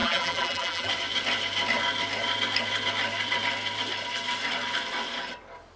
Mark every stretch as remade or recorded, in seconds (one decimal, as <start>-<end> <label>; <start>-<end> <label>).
0.0-0.9 remade; 0.9-5.8 recorded